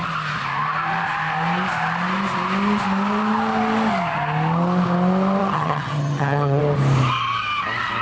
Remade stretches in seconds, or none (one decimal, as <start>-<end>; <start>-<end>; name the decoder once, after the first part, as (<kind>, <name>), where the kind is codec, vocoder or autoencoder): 5.4-6.6 (vocoder, HiFi-GAN)